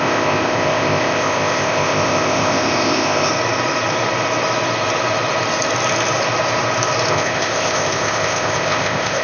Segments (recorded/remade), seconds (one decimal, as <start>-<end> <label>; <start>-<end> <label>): 0.0-3.3 remade; 3.3-7.1 recorded; 7.1-9.2 remade